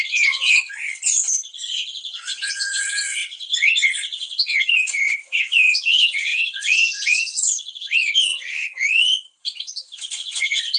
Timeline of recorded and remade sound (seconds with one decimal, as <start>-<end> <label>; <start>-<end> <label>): 0.0-10.8 remade